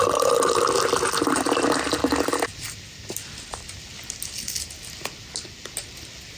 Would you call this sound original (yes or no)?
yes